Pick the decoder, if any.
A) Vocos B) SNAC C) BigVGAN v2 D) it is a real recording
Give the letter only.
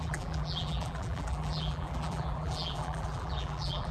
C